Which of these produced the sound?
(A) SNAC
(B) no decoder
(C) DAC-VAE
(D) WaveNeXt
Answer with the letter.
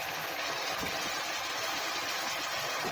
B